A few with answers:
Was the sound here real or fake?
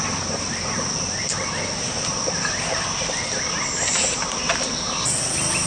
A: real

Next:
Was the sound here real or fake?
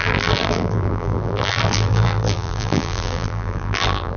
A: fake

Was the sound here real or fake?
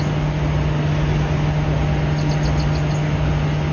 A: real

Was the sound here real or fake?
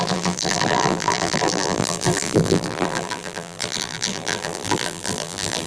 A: fake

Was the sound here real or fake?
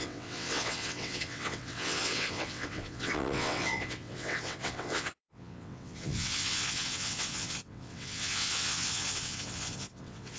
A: fake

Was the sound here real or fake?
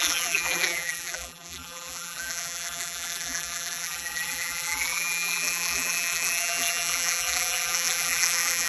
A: fake